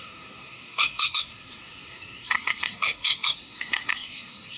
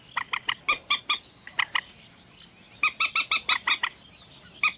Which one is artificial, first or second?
first